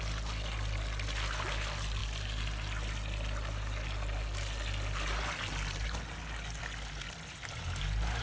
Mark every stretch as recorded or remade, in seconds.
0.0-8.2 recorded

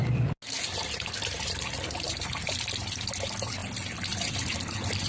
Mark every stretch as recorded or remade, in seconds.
0.0-5.1 recorded

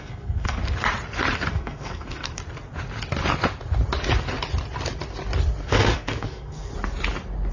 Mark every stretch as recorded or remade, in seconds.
0.0-0.6 remade; 0.6-1.5 recorded; 1.5-2.4 remade; 2.4-5.6 recorded; 5.6-6.7 remade; 6.7-7.5 recorded

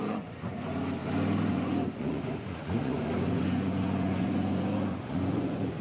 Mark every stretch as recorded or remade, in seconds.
0.0-0.7 remade; 0.7-1.5 recorded; 1.5-5.8 remade

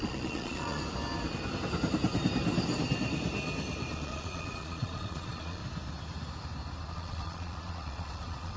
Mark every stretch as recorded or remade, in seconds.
0.0-0.8 remade; 0.8-3.9 recorded; 3.9-5.6 remade; 5.6-6.9 recorded; 6.9-8.6 remade

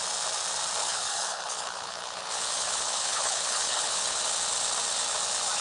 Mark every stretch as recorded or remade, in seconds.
0.0-0.8 recorded; 0.8-4.2 remade; 4.2-5.6 recorded

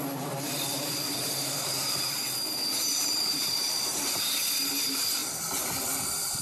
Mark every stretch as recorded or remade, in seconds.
0.0-0.7 recorded; 0.7-2.2 remade; 2.2-2.9 recorded; 2.9-4.2 remade; 4.2-6.4 recorded

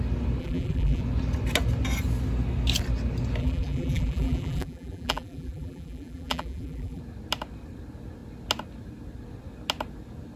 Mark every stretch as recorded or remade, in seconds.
0.0-0.4 recorded; 0.4-1.0 remade; 1.0-3.4 recorded; 3.4-7.0 remade; 7.0-10.4 recorded